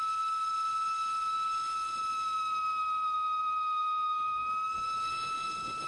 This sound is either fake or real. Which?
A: real